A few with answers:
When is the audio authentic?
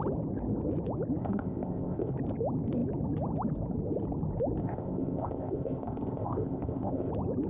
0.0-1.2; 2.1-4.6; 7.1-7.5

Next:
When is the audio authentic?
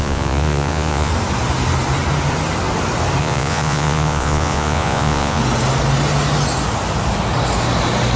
1.1-3.2; 5.4-8.2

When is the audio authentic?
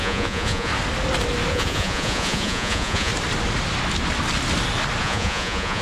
0.7-1.5; 3.1-5.0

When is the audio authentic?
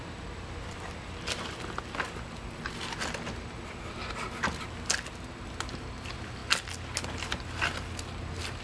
0.0-8.6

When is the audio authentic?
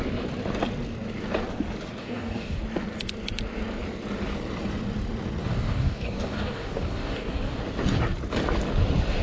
0.0-2.0; 2.6-5.4; 7.6-9.2